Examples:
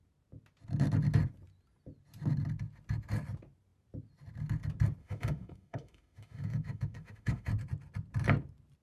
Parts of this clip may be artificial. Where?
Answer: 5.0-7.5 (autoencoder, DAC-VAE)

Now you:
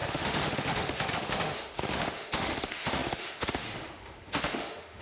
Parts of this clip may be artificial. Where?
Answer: 0.0-5.0 (autoencoder, DAC-VAE)

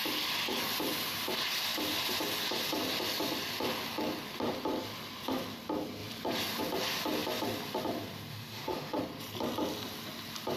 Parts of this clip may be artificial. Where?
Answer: 8.3-9.0 (autoencoder, DAC-VAE)